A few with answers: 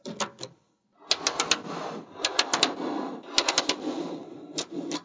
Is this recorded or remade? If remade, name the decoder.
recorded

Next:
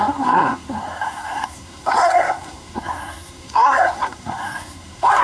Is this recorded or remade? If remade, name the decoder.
remade, codec, SNAC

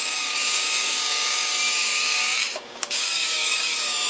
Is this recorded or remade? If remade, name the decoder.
remade, codec, DAC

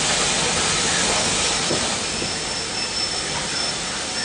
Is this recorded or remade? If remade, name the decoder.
recorded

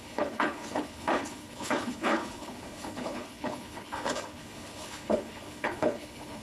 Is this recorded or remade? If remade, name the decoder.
remade, codec, HILCodec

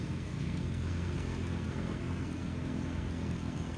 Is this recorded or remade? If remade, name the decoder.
remade, codec, SNAC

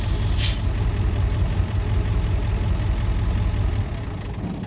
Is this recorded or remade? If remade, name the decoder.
recorded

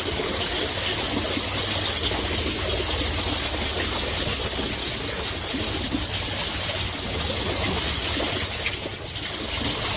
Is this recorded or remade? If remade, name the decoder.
recorded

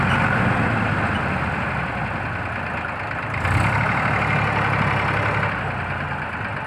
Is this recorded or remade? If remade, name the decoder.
recorded